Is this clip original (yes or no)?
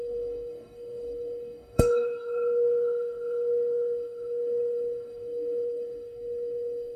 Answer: no